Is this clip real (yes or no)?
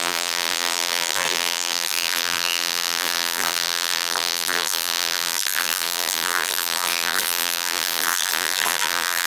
no